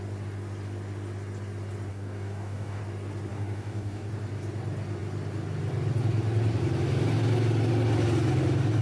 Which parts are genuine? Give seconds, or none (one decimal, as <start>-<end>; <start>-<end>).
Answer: 0.0-1.9; 2.8-3.3; 4.1-8.8